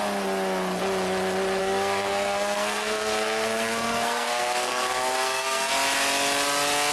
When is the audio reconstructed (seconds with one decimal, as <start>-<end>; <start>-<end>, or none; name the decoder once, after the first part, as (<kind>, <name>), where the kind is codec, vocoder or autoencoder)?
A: 1.6-5.7 (codec, SNAC)